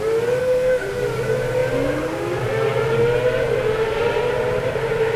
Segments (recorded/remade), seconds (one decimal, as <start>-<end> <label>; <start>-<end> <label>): 0.0-0.4 recorded; 0.4-1.0 remade; 1.0-5.2 recorded